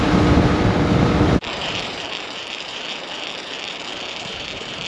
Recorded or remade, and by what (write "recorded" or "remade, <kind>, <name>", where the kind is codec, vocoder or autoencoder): remade, vocoder, BigVGAN v2